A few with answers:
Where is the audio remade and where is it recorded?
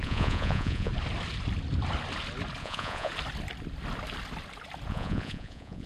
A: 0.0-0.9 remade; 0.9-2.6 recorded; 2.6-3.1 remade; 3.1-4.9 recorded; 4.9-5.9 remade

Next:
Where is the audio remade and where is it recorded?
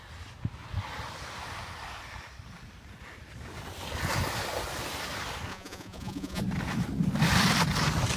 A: 0.0-5.5 recorded; 5.5-6.4 remade; 6.4-8.2 recorded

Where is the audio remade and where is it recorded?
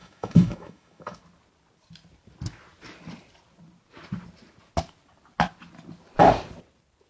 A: 0.0-1.2 remade; 1.2-7.1 recorded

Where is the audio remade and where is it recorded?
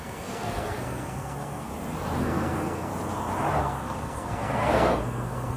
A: 0.0-1.7 remade; 1.7-2.2 recorded; 2.2-2.9 remade; 2.9-3.6 recorded; 3.6-5.6 remade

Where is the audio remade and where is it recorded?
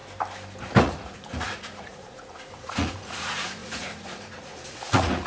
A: 0.0-0.8 recorded; 0.8-5.3 remade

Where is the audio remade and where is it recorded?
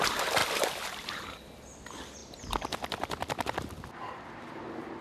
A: 0.0-0.4 recorded; 0.4-1.6 remade; 1.6-5.0 recorded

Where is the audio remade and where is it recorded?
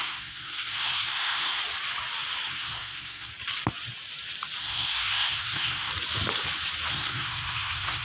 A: 0.0-1.6 remade; 1.6-2.5 recorded; 2.5-3.3 remade; 3.3-4.6 recorded; 4.6-5.9 remade; 5.9-6.9 recorded; 6.9-8.0 remade